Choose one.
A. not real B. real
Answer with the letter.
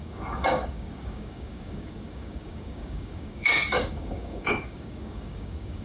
A